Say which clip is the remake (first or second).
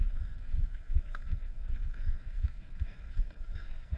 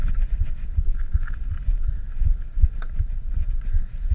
first